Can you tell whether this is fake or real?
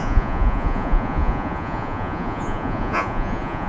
fake